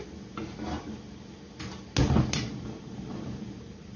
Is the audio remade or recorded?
recorded